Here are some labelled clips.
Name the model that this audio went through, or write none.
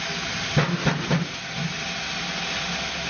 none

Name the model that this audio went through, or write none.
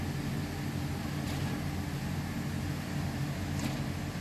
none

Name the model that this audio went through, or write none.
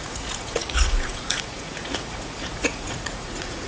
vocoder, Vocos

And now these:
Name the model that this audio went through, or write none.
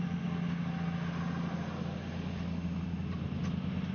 none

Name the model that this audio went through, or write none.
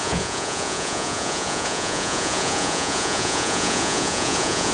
vocoder, Vocos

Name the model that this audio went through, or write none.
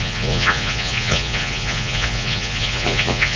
vocoder, Vocos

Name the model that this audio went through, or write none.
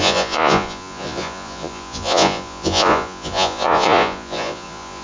vocoder, Vocos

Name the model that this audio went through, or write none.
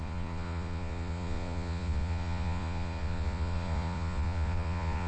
vocoder, Vocos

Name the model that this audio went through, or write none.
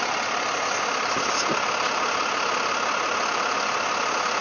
none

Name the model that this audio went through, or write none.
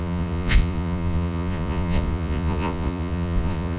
vocoder, Vocos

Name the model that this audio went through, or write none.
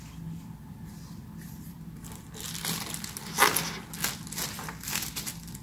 none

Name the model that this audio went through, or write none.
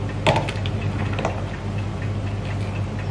none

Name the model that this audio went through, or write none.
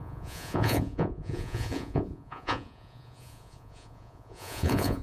vocoder, Vocos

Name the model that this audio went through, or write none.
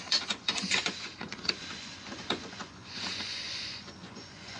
vocoder, Vocos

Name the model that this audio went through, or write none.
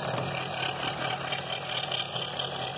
none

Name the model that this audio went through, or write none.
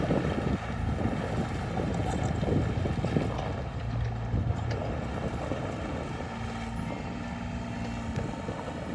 none